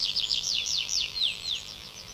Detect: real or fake fake